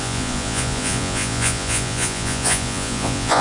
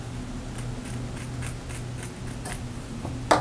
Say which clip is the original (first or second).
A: second